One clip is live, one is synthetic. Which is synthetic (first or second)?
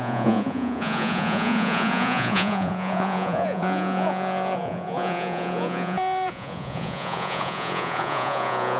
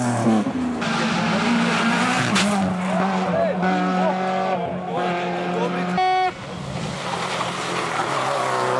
first